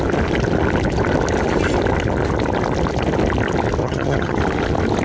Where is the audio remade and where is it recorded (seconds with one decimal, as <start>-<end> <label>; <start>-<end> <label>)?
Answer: 0.0-3.8 recorded; 3.8-4.4 remade; 4.4-5.0 recorded